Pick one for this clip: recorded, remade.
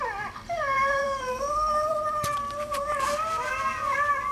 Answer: remade